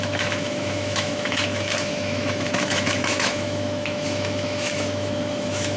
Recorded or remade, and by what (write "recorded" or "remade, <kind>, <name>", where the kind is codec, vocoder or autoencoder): remade, autoencoder, DAC-VAE